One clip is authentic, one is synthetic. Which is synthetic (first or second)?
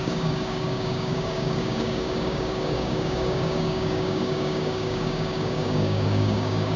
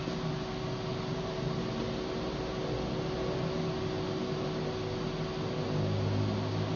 first